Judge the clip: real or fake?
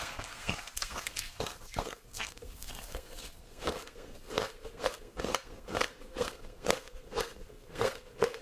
fake